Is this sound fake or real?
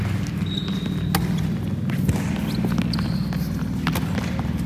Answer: real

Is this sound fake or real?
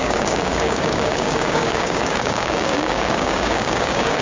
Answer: fake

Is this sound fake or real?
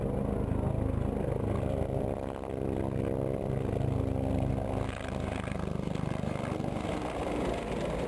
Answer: real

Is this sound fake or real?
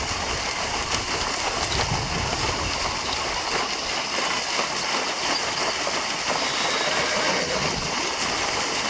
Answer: real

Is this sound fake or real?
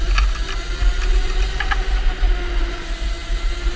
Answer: real